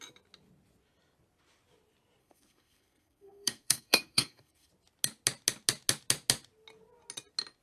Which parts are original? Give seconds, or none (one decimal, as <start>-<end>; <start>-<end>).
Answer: 0.0-2.2; 4.7-7.6